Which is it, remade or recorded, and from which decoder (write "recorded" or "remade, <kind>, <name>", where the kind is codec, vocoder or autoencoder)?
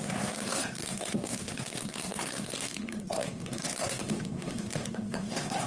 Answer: remade, codec, SNAC